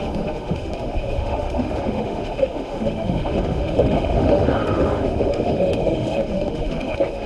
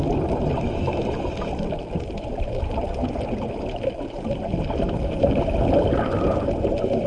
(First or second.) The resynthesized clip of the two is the first